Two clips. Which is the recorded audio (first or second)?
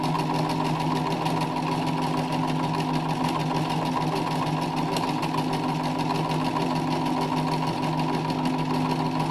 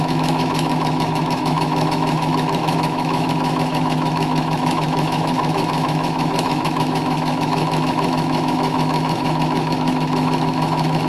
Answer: first